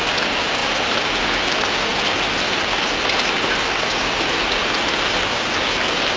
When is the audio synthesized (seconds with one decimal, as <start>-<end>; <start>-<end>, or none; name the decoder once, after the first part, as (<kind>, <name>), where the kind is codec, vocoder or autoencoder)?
0.6-1.2 (vocoder, BigVGAN v2); 1.9-4.6